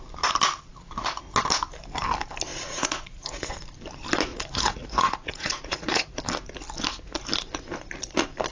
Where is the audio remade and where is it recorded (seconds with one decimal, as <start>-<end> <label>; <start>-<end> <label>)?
0.0-2.5 recorded; 2.5-3.5 remade; 3.5-4.3 recorded; 4.3-6.2 remade; 6.2-8.5 recorded